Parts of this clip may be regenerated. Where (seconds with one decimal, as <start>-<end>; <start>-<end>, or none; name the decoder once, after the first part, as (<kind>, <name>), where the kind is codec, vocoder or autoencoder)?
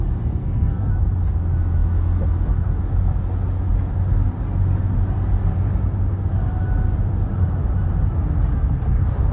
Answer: 0.4-0.9 (codec, SNAC)